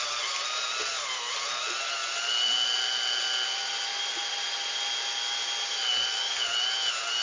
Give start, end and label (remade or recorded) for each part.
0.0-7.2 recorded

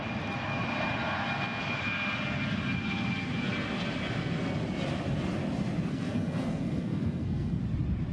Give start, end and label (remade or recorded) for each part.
0.0-5.9 recorded; 5.9-7.6 remade; 7.6-8.1 recorded

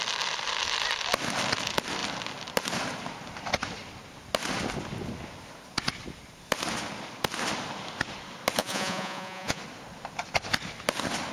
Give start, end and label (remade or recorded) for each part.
0.0-8.6 recorded; 8.6-9.6 remade; 9.6-11.3 recorded

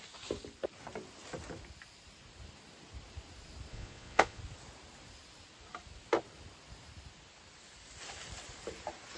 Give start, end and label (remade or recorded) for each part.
0.0-3.7 recorded; 3.7-4.4 remade; 4.4-9.2 recorded

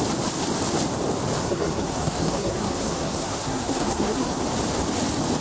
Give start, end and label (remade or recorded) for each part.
0.0-1.4 recorded; 1.4-4.4 remade; 4.4-5.4 recorded

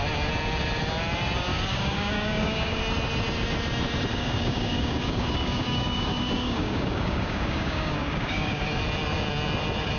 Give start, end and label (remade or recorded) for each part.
0.0-1.5 recorded; 1.5-2.8 remade; 2.8-4.1 recorded; 4.1-8.6 remade; 8.6-10.0 recorded

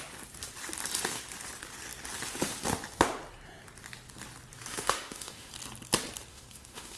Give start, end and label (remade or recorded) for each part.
0.0-4.7 recorded; 4.7-5.5 remade; 5.5-6.3 recorded; 6.3-7.0 remade

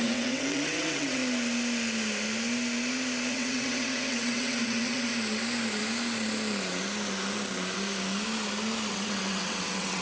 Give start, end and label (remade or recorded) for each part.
0.0-1.2 remade; 1.2-3.3 recorded; 3.3-5.1 remade; 5.1-8.9 recorded; 8.9-10.0 remade